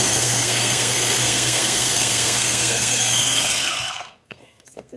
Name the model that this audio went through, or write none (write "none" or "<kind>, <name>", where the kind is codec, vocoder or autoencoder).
codec, SNAC